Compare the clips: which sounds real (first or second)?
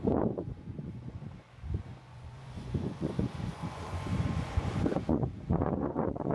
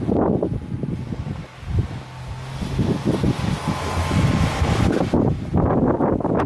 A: second